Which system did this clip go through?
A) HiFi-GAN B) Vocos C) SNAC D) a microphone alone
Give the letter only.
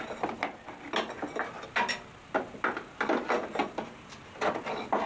D